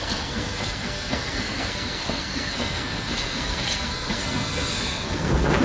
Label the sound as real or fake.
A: fake